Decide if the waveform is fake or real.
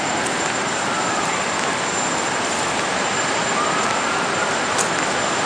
real